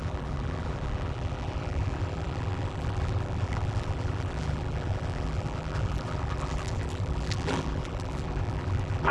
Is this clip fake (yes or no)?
yes